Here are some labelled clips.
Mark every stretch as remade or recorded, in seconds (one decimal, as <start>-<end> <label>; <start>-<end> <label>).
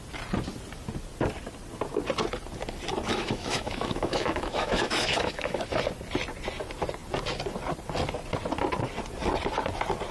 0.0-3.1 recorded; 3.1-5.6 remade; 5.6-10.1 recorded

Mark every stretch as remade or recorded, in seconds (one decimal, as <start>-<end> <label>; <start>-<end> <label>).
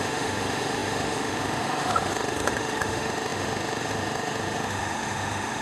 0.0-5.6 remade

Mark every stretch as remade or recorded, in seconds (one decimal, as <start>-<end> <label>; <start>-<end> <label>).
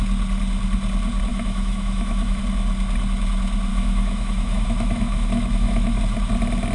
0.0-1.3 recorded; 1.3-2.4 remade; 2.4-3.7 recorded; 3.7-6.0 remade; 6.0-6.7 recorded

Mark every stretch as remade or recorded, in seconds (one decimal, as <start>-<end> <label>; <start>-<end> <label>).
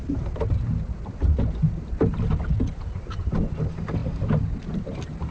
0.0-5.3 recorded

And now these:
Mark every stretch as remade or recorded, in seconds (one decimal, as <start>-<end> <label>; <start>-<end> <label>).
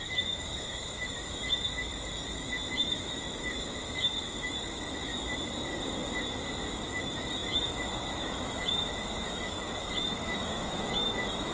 0.0-5.1 remade; 5.1-6.9 recorded; 6.9-11.5 remade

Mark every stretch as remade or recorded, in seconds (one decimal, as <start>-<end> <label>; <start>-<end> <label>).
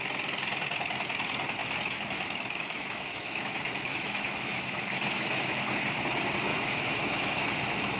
0.0-1.6 recorded; 1.6-5.5 remade; 5.5-6.5 recorded; 6.5-7.4 remade; 7.4-8.0 recorded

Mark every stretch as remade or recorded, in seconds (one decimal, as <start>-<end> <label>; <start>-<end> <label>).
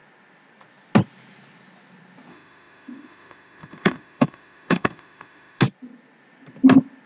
0.0-2.3 recorded; 2.3-5.6 remade; 5.6-7.1 recorded